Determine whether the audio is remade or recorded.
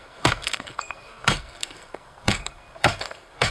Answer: remade